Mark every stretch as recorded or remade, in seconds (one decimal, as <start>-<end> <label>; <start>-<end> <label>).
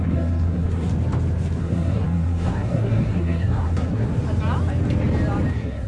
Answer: 0.0-0.9 remade; 0.9-1.6 recorded; 1.6-4.1 remade; 4.1-5.5 recorded; 5.5-5.9 remade